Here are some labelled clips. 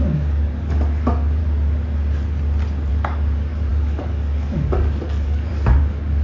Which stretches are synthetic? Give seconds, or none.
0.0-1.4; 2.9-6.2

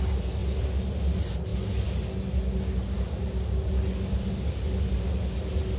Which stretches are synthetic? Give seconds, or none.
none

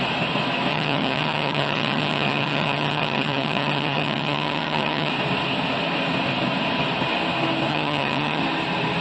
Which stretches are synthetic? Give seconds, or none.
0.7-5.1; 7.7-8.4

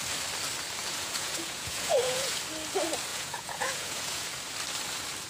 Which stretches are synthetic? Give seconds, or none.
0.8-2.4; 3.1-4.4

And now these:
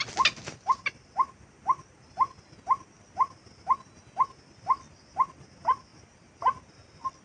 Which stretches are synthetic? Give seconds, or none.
none

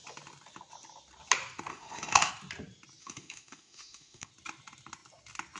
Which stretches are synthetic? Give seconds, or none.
1.7-2.3; 3.0-4.3

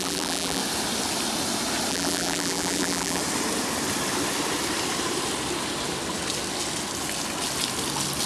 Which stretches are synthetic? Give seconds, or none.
0.0-0.6; 1.9-3.2